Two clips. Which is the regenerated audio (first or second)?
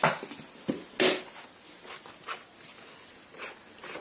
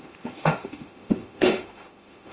second